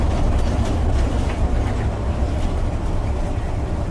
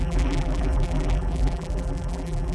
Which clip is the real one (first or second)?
first